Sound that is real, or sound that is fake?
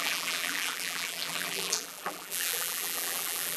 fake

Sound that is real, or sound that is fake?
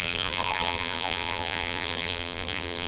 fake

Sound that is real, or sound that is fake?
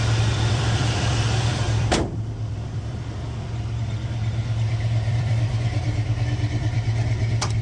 fake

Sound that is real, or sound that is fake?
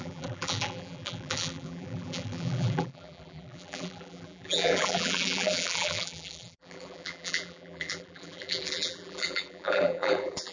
fake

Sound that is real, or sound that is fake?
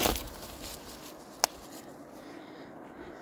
real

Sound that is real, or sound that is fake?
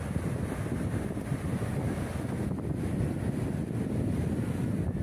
real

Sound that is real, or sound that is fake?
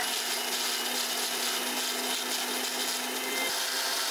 real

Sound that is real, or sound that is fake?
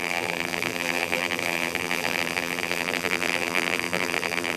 fake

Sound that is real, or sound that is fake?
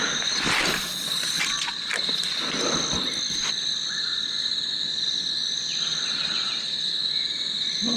real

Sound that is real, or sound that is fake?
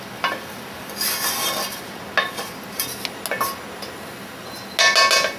real